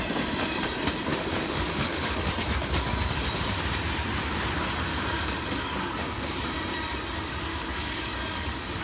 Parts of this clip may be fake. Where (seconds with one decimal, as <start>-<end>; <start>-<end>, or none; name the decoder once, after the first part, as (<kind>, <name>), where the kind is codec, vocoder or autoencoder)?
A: 1.1-2.3 (codec, DAC); 4.9-6.4; 7.5-8.8